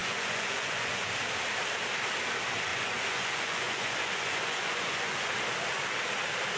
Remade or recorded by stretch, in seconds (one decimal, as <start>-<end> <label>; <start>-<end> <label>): 0.0-1.1 remade; 1.1-2.7 recorded; 2.7-5.3 remade; 5.3-6.6 recorded